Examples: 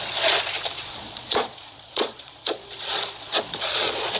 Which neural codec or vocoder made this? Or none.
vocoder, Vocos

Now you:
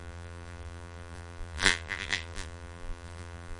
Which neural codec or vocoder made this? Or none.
vocoder, BigVGAN v2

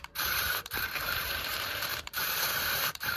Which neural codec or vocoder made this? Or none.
vocoder, BigVGAN v2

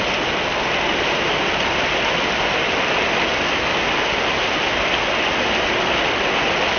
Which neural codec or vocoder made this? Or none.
none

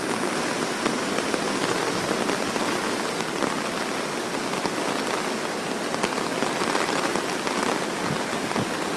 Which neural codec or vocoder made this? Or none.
none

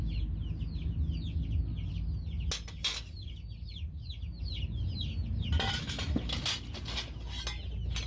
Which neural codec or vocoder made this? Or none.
none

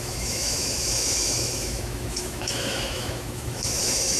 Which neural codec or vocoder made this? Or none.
autoencoder, DAC-VAE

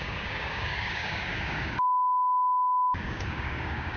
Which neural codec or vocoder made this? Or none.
codec, DAC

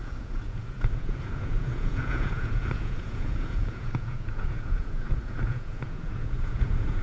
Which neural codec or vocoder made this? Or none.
vocoder, Vocos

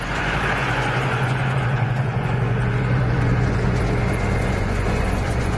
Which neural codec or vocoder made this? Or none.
vocoder, Vocos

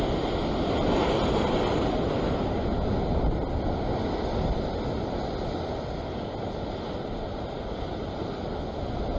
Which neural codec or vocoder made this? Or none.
none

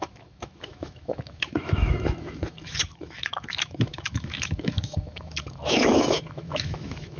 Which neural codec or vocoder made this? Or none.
autoencoder, DAC-VAE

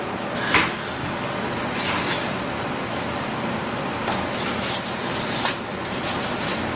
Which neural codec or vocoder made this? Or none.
none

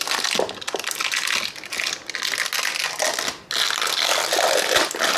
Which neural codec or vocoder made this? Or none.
none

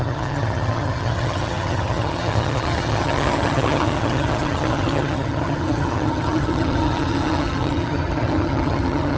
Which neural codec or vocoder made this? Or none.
vocoder, HiFi-GAN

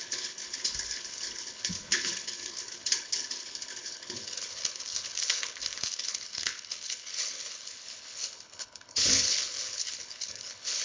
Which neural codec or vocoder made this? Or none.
codec, HILCodec